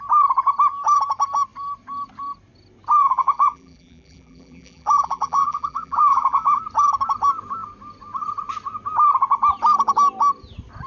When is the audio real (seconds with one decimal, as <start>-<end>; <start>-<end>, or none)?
0.0-3.0; 6.6-10.9